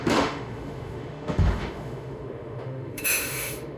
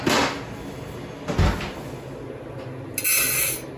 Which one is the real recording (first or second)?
second